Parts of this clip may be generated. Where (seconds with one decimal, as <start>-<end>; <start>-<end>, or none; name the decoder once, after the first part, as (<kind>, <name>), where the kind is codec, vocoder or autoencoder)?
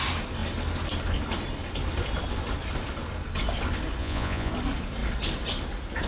4.0-4.5 (vocoder, Vocos)